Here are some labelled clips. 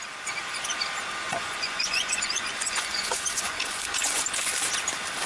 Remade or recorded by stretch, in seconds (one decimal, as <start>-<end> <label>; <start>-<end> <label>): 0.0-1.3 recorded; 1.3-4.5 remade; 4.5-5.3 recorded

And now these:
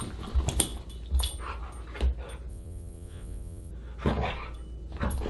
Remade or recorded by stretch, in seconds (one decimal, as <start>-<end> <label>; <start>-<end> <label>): 0.0-2.5 recorded; 2.5-3.7 remade; 3.7-5.3 recorded

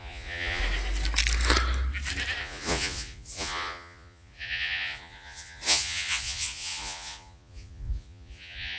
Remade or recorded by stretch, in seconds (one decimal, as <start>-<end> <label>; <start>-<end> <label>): 0.0-0.6 remade; 0.6-2.4 recorded; 2.4-8.8 remade

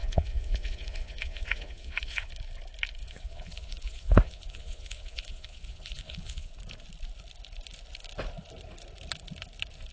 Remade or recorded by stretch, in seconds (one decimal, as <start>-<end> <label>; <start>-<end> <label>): 0.0-2.3 remade; 2.3-3.0 recorded; 3.0-6.5 remade; 6.5-9.9 recorded